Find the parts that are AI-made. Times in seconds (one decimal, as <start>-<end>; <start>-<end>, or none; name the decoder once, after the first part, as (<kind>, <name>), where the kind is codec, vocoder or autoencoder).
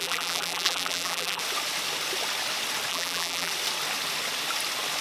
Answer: 0.0-1.4 (vocoder, BigVGAN v2); 2.9-3.5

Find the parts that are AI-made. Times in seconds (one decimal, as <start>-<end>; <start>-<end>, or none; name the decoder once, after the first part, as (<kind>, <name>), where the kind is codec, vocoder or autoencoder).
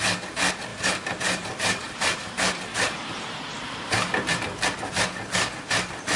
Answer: 0.7-4.4 (vocoder, BigVGAN v2)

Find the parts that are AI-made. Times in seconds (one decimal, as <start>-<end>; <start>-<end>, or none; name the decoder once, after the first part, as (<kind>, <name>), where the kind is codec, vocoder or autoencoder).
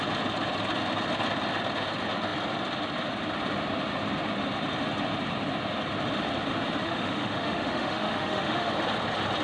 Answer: 6.8-8.7 (autoencoder, DAC-VAE)